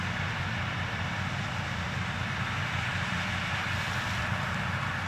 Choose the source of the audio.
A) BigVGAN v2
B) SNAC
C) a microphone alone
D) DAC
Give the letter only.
A